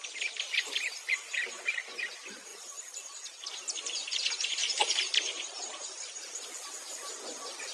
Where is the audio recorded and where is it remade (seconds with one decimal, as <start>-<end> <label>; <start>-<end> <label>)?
0.0-2.5 recorded; 2.5-3.3 remade; 3.3-4.6 recorded; 4.6-6.1 remade; 6.1-7.7 recorded